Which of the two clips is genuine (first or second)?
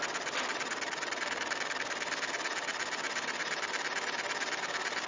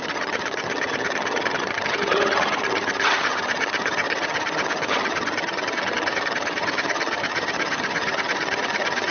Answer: first